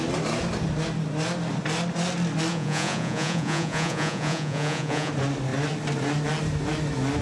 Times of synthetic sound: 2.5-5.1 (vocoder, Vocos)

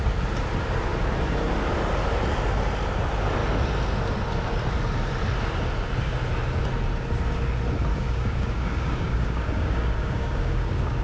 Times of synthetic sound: 7.9-11.0 (codec, DAC)

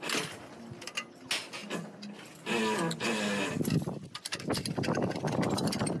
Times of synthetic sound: none

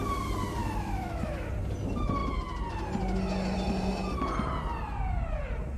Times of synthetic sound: 0.6-1.5 (autoencoder, DAC-VAE)

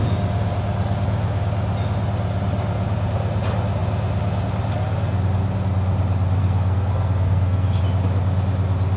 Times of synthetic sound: 6.4-7.8 (codec, SNAC)